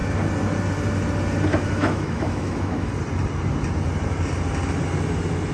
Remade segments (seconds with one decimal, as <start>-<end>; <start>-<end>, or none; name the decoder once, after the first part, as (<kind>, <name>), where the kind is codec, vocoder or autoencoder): 1.5-2.9 (autoencoder, DAC-VAE)